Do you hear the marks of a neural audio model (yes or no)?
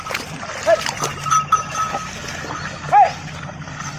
no